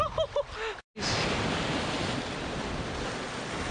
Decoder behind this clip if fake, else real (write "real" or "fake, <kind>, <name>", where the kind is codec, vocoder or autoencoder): real